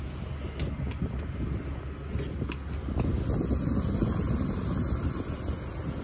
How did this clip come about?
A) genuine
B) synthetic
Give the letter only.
A